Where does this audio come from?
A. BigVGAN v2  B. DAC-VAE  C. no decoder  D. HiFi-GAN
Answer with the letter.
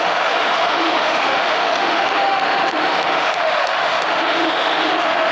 B